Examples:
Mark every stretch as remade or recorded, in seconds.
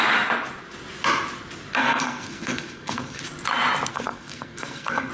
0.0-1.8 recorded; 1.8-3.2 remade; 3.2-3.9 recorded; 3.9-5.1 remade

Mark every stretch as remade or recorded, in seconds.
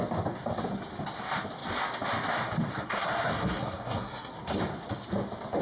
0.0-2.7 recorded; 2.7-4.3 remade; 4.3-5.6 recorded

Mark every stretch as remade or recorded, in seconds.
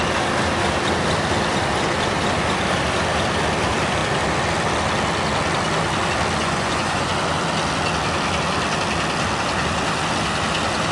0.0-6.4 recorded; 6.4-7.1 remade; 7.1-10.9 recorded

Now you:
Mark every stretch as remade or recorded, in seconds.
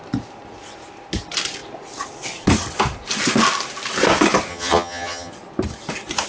0.0-4.5 recorded; 4.5-5.3 remade; 5.3-6.3 recorded